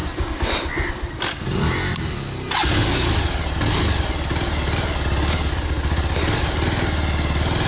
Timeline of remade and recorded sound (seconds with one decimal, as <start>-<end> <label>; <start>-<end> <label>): 0.0-7.7 recorded